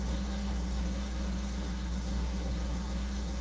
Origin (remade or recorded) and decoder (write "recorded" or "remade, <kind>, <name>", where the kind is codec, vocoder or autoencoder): remade, codec, SNAC